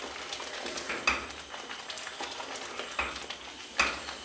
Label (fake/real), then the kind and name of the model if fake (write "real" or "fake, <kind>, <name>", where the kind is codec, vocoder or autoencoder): real